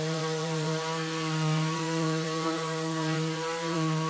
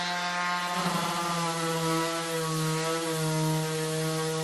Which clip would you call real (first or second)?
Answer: second